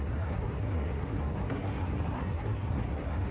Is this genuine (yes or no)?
no